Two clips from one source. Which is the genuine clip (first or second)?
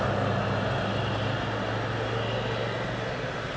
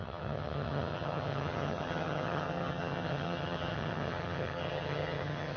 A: first